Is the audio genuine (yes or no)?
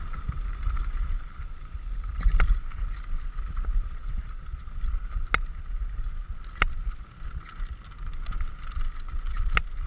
yes